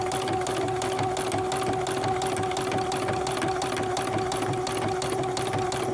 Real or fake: real